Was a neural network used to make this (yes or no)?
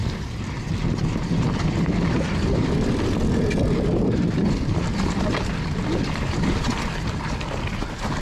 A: yes